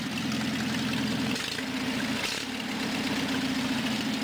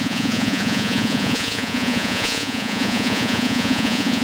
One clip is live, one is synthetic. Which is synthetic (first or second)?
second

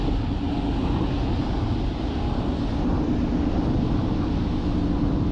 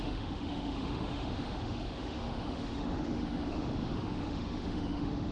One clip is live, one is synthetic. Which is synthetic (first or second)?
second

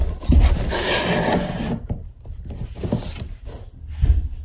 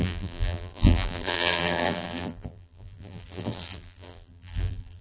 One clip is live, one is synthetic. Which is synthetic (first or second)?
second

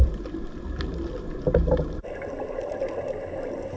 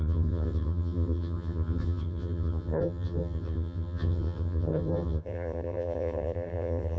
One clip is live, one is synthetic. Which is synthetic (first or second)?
second